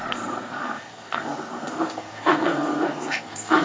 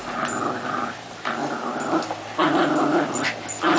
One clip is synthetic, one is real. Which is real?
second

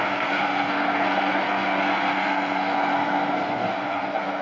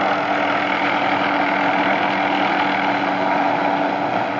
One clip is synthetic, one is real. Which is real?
second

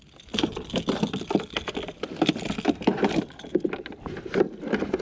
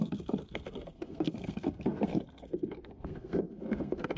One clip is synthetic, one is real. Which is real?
first